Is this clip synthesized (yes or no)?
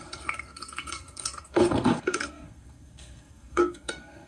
yes